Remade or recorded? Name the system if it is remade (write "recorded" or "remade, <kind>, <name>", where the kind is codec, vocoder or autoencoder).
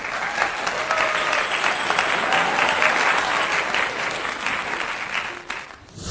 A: recorded